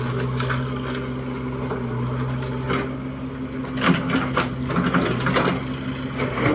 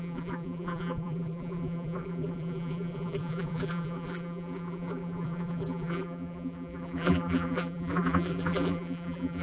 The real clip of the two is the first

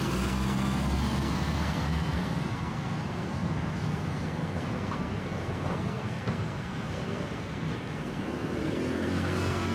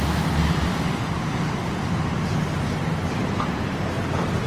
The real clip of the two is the second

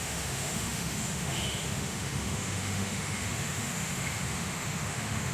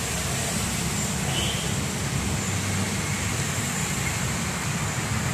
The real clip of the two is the second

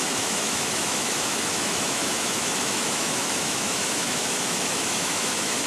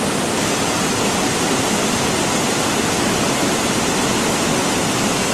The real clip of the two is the second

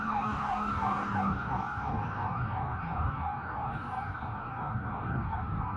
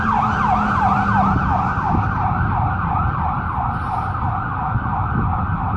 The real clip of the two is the second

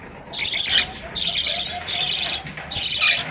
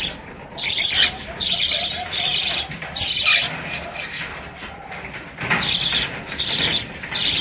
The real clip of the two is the first